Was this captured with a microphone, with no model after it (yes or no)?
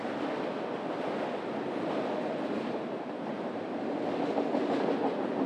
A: yes